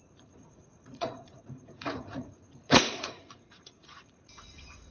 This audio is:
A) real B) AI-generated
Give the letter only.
B